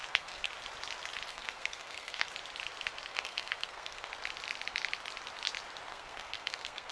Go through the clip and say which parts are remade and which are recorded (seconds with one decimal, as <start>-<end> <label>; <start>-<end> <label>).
0.0-0.5 remade; 0.5-1.3 recorded; 1.3-2.3 remade; 2.3-3.1 recorded; 3.1-4.1 remade; 4.1-5.9 recorded; 5.9-6.9 remade